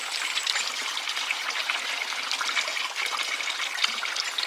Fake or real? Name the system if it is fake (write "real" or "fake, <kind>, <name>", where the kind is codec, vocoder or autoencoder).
real